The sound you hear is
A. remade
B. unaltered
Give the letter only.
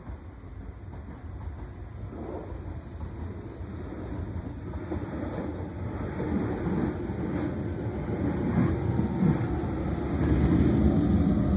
B